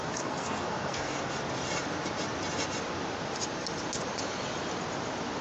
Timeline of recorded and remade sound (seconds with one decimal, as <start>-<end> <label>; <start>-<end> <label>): 0.0-1.3 remade; 1.3-5.4 recorded